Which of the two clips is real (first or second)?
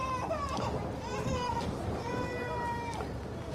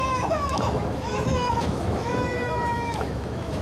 first